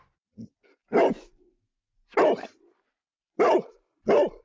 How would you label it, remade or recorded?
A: recorded